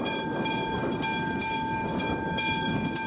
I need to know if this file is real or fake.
fake